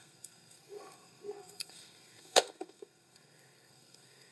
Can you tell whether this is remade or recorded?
remade